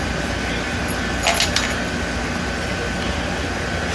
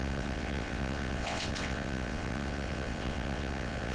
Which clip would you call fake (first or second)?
second